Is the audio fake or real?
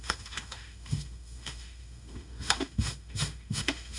fake